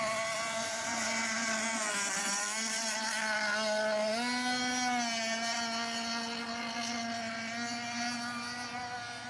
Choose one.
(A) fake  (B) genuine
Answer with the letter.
B